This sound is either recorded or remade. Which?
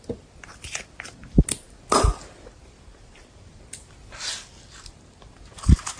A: recorded